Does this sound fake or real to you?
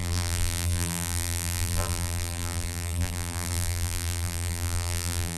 fake